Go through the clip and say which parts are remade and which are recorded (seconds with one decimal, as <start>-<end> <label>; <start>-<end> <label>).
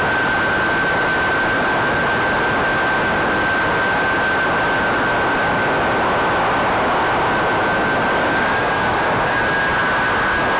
0.0-8.1 recorded; 8.1-9.4 remade; 9.4-10.6 recorded